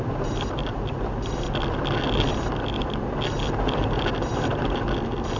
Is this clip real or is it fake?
real